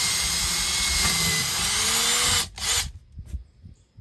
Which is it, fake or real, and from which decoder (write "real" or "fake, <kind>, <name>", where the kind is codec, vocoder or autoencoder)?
real